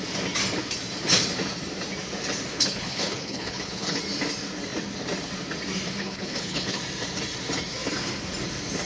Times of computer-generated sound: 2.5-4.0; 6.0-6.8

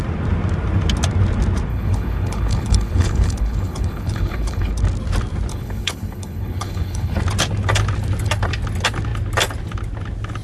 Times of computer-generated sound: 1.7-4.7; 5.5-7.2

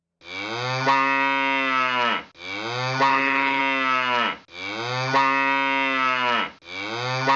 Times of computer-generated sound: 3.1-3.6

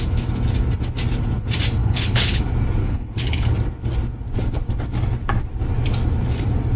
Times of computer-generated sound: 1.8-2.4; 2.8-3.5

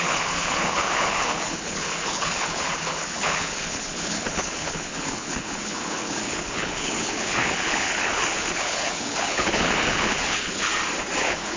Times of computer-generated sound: 0.0-10.7; 11.2-11.6

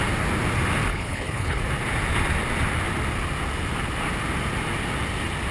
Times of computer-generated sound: 0.9-1.6